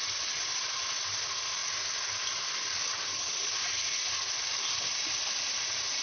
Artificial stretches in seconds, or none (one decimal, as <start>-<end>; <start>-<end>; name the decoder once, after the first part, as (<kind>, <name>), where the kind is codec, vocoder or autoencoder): none